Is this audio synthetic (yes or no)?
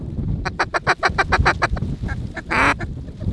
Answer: no